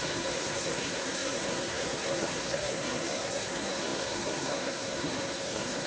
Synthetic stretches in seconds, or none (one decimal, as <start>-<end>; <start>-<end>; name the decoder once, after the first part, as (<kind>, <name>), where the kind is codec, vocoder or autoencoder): 0.0-5.9 (codec, SNAC)